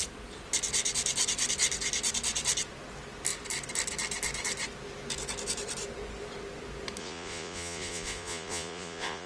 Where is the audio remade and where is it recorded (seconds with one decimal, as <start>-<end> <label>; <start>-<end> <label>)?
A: 0.0-7.0 recorded; 7.0-9.3 remade